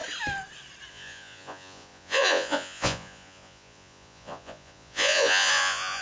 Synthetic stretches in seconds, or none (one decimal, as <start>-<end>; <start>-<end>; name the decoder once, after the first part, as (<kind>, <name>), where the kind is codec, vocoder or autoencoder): 0.9-6.0 (vocoder, Vocos)